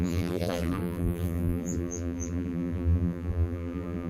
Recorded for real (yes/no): no